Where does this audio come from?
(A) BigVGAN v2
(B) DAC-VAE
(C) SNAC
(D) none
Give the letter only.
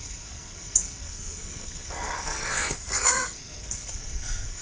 C